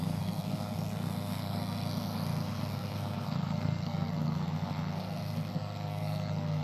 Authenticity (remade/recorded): remade